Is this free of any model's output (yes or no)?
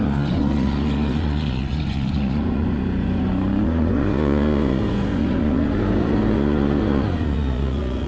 no